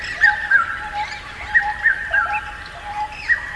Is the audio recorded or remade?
remade